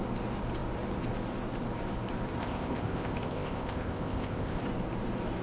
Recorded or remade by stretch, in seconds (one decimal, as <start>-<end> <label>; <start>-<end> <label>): 0.0-2.4 recorded; 2.4-4.6 remade; 4.6-5.4 recorded